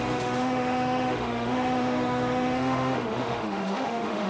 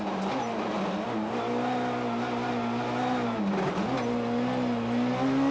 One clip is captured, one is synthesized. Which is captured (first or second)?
second